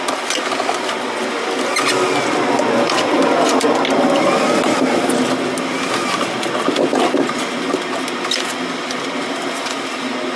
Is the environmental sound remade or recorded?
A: recorded